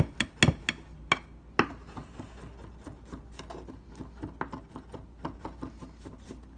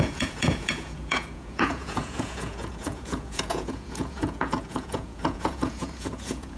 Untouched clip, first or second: first